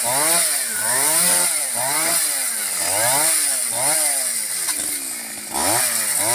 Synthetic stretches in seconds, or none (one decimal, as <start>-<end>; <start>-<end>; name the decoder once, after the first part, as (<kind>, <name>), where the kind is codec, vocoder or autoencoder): 0.8-2.1 (vocoder, BigVGAN v2)